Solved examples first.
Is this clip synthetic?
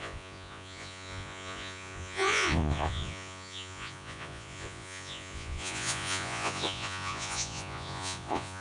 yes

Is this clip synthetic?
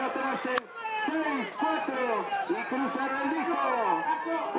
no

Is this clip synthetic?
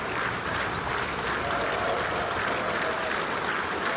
no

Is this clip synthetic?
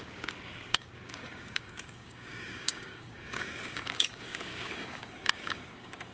yes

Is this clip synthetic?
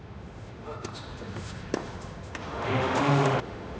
yes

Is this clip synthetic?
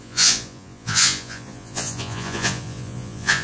yes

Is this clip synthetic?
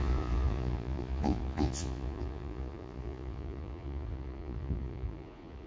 yes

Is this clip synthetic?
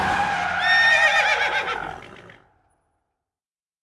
no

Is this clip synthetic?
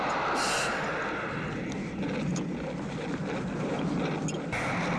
no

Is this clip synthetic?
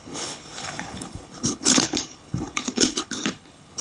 yes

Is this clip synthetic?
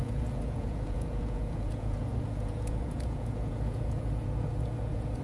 yes